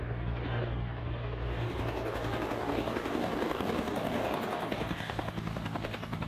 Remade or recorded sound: remade